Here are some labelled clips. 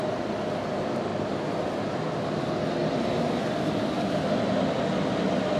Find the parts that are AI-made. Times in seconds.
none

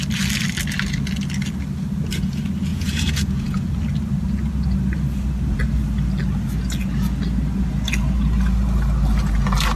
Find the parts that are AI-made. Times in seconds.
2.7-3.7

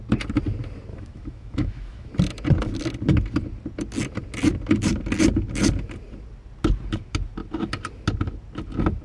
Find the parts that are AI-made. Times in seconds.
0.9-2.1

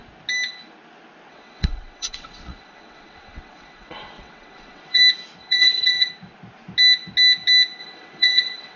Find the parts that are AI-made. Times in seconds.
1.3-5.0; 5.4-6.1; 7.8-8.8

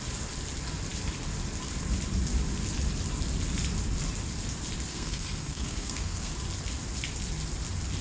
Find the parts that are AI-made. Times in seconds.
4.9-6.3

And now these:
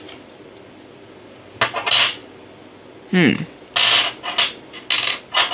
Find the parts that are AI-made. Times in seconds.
none

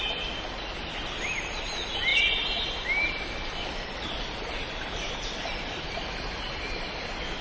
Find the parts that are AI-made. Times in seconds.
2.1-6.1